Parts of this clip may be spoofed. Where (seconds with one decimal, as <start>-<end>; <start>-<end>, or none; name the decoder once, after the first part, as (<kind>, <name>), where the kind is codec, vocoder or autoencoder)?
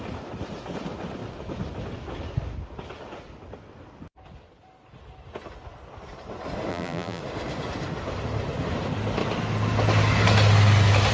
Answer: 6.7-7.2 (vocoder, BigVGAN v2)